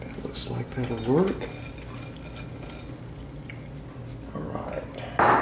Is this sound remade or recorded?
recorded